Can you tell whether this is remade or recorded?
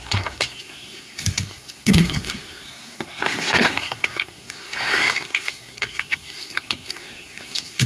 remade